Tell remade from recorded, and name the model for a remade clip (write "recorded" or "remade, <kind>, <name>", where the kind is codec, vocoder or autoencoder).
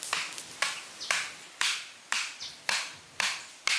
recorded